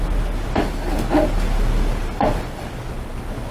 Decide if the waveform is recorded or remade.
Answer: recorded